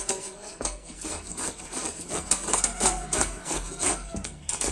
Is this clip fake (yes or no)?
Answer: yes